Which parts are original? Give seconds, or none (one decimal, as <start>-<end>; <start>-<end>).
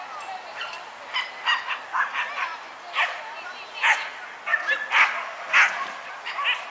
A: 0.0-6.7